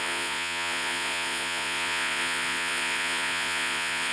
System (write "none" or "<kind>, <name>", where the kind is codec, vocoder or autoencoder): vocoder, Vocos